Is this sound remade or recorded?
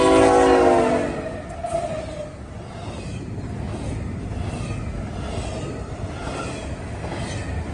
recorded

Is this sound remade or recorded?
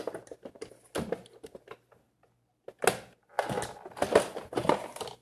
recorded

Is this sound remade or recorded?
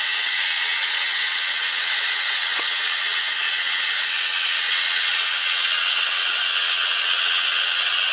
remade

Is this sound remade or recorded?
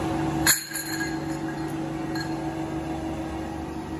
recorded